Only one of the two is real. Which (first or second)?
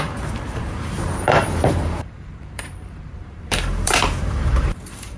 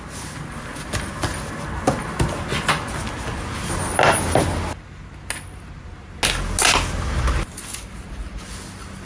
second